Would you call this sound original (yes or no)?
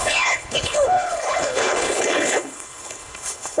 no